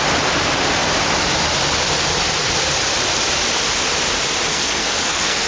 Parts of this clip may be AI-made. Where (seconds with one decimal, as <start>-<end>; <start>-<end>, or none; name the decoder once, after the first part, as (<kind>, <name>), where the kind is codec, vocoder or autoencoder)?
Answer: 4.5-5.5 (codec, SNAC)